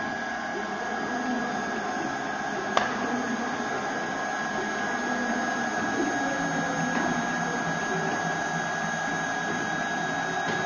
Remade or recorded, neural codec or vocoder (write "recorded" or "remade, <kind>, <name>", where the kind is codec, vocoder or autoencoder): recorded